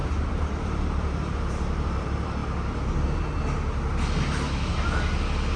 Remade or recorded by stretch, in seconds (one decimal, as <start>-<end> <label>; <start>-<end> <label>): 0.0-0.5 recorded; 0.5-2.4 remade; 2.4-5.6 recorded